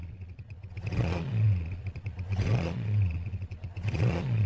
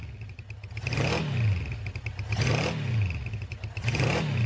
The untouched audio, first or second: second